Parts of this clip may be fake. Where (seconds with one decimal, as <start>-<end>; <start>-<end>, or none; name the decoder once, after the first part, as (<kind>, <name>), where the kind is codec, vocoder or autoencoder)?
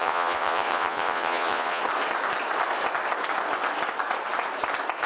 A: 0.0-1.8 (vocoder, Vocos)